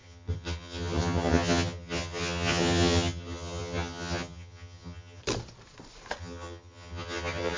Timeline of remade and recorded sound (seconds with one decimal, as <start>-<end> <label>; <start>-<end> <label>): 0.0-5.2 remade; 5.2-6.2 recorded; 6.2-7.6 remade